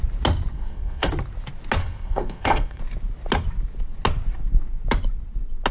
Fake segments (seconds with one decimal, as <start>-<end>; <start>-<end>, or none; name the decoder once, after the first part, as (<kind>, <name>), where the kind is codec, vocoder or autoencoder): 0.5-1.1 (codec, SNAC); 1.8-2.8